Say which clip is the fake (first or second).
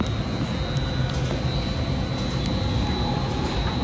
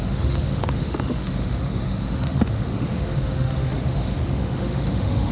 second